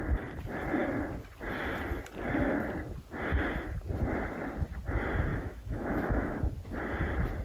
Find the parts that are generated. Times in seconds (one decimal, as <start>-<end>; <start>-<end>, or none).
5.3-6.4